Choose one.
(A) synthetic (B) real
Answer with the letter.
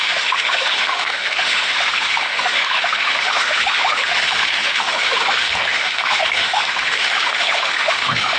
A